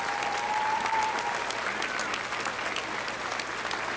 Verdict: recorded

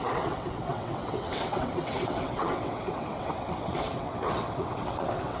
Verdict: remade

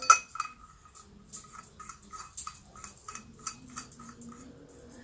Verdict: recorded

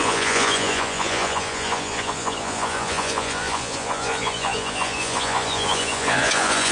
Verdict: remade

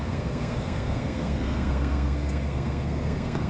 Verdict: remade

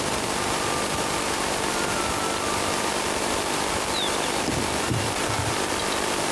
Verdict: remade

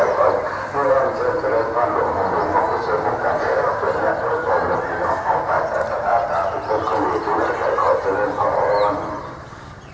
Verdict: recorded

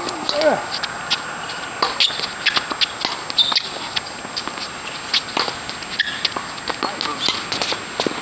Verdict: recorded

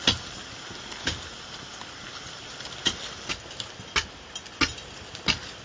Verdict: recorded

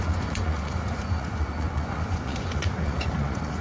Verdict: remade